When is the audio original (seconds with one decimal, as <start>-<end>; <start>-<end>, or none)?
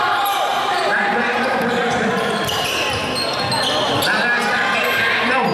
3.0-4.8